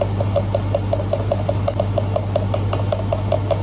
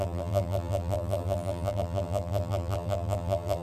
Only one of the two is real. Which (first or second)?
first